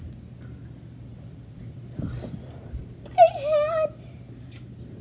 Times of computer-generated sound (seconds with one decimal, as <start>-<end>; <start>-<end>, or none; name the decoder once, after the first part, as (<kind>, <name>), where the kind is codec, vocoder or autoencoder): 1.1-2.8 (vocoder, BigVGAN v2)